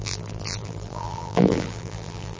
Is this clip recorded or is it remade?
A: remade